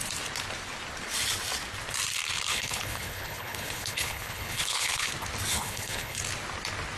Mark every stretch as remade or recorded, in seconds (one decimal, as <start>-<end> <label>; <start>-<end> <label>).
0.0-2.5 recorded; 2.5-5.1 remade; 5.1-5.5 recorded; 5.5-6.2 remade; 6.2-7.0 recorded